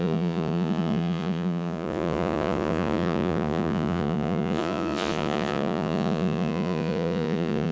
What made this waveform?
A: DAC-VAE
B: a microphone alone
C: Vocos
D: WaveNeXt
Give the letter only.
C